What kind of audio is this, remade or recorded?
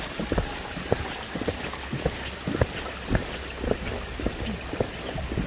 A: recorded